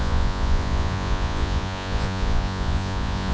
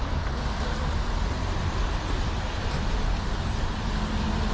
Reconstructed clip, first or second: first